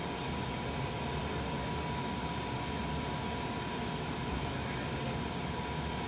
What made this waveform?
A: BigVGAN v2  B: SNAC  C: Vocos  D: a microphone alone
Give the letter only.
D